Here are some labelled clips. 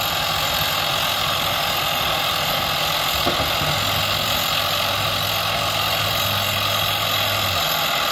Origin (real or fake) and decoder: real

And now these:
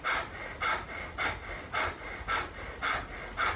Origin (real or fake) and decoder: real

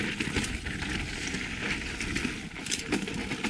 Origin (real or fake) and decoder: real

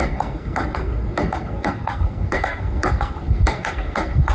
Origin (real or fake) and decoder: fake, codec, SNAC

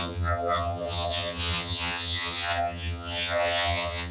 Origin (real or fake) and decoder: fake, vocoder, HiFi-GAN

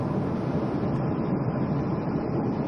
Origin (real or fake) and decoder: real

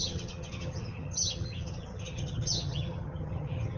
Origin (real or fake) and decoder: fake, vocoder, HiFi-GAN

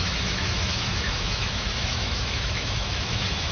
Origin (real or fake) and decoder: fake, autoencoder, DAC-VAE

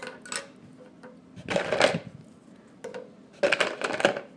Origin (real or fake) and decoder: real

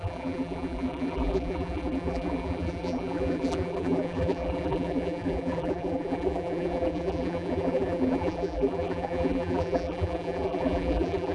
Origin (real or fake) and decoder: fake, vocoder, BigVGAN v2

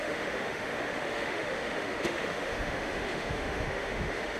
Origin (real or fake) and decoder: fake, autoencoder, DAC-VAE